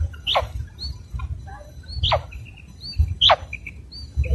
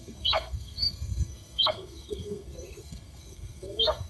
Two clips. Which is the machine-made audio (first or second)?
second